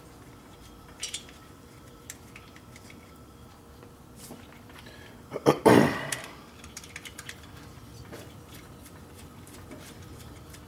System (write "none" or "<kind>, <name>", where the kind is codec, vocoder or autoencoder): vocoder, BigVGAN v2